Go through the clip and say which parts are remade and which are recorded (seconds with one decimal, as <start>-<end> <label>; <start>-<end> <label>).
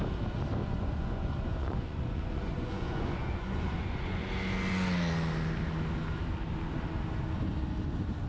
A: 0.0-0.6 recorded; 0.6-4.3 remade; 4.3-8.3 recorded